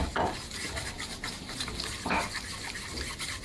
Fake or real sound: real